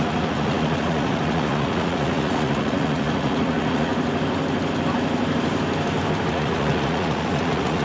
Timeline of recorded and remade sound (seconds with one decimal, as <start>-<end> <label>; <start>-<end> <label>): 0.0-3.9 remade; 3.9-6.3 recorded; 6.3-7.8 remade